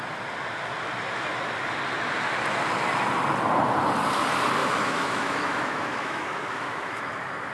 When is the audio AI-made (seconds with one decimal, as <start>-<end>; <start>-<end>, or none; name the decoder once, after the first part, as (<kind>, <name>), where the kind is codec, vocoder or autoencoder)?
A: 4.6-7.1 (autoencoder, DAC-VAE)